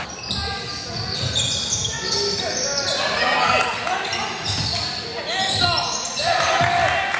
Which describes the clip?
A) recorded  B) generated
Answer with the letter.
A